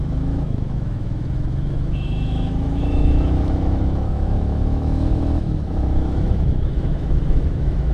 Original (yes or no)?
no